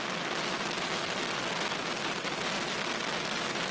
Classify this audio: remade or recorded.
recorded